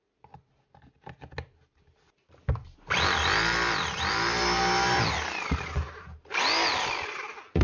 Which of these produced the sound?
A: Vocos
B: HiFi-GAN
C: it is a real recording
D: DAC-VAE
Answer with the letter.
C